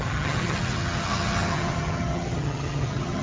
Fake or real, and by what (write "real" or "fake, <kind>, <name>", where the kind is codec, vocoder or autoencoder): fake, vocoder, HiFi-GAN